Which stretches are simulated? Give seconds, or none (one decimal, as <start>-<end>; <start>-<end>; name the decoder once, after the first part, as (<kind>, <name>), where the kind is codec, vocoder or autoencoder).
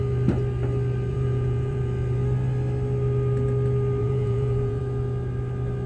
1.1-1.8 (vocoder, Vocos); 4.0-4.8